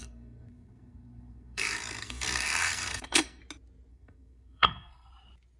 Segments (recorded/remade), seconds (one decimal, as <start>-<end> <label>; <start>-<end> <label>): 0.0-3.4 remade; 3.4-3.9 recorded; 3.9-5.1 remade; 5.1-5.6 recorded